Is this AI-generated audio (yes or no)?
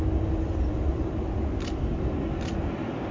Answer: no